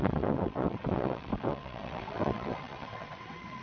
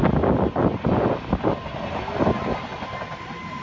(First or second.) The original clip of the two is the second